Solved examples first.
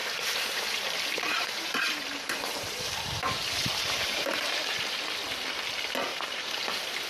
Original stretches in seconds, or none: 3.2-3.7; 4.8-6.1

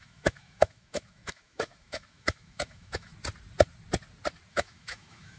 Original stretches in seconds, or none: 3.1-4.5

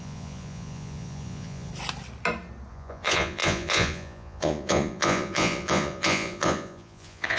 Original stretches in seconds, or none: 1.7-2.7

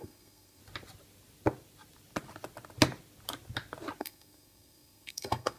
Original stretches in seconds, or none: 0.6-4.0

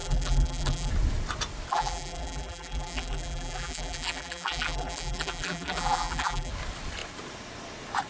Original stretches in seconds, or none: 0.9-1.7; 6.5-8.1

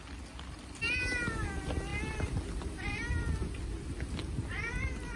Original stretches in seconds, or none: 0.0-5.2

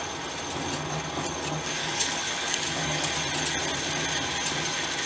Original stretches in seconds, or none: 0.0-1.8; 3.1-5.1